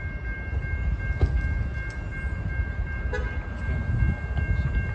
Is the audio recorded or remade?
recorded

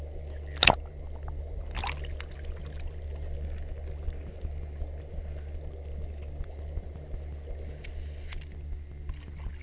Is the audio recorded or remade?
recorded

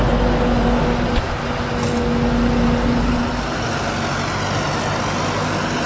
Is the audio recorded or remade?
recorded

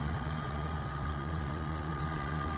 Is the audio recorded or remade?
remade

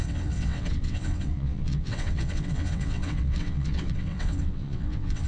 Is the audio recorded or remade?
remade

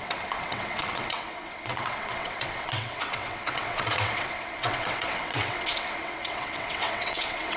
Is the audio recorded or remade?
remade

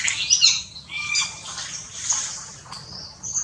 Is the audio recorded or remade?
recorded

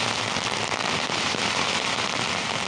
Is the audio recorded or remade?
recorded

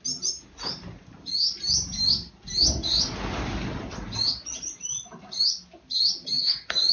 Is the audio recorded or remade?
recorded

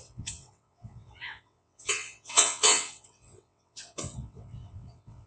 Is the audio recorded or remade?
remade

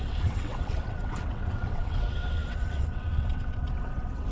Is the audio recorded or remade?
remade